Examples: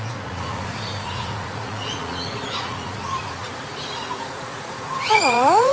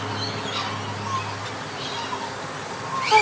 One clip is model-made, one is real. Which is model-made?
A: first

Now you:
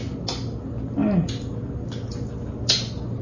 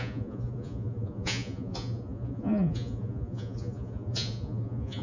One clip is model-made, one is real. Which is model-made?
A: second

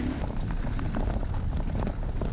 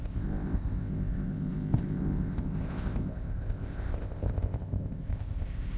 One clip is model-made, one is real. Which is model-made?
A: second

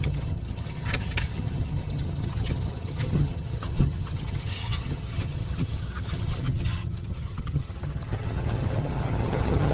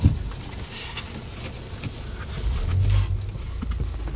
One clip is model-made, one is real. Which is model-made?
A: first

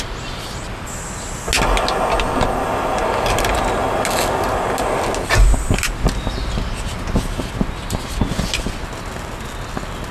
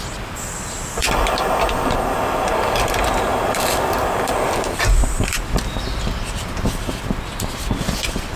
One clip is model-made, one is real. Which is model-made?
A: second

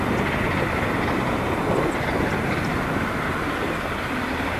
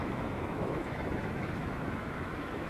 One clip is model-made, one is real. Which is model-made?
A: second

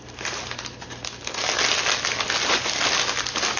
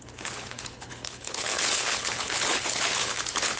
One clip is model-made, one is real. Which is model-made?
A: second